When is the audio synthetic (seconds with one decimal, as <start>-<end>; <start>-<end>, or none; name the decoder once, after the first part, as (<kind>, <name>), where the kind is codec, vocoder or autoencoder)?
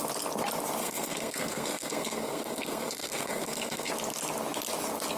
0.8-3.9 (codec, SNAC)